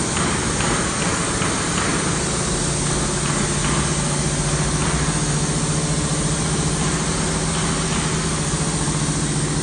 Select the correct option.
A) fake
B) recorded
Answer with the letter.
B